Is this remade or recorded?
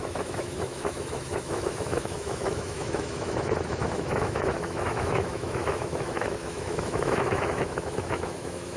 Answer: remade